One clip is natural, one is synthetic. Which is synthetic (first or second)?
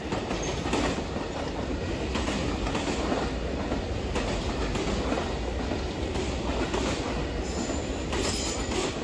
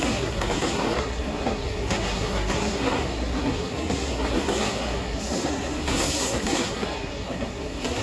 second